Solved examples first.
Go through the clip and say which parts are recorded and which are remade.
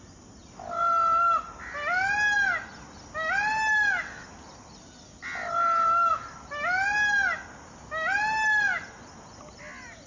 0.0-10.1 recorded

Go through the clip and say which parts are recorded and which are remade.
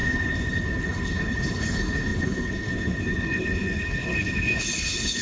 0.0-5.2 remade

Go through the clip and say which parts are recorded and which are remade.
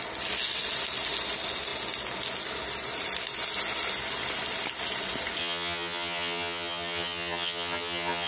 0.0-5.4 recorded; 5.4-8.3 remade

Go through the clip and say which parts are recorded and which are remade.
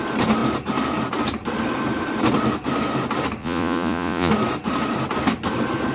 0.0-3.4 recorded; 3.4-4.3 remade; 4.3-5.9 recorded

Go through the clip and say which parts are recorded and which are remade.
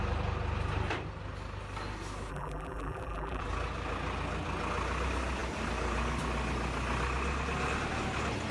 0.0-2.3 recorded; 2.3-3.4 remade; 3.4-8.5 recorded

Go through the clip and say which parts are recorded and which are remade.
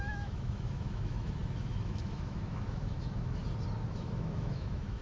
0.0-3.4 remade; 3.4-3.9 recorded; 3.9-5.0 remade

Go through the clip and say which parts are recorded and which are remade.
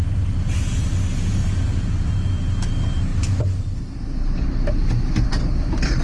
0.0-6.0 recorded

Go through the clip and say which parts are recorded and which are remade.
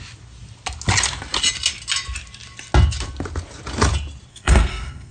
0.0-4.3 recorded; 4.3-5.1 remade